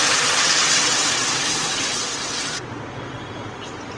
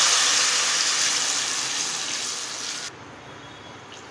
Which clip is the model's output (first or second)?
first